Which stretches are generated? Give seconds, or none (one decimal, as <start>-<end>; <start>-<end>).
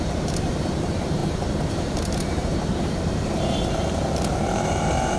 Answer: 0.0-5.2